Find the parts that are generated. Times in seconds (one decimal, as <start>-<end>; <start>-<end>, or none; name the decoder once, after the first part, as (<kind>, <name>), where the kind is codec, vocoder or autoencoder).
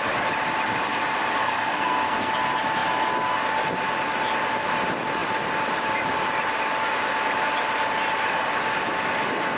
1.4-2.3 (codec, SNAC)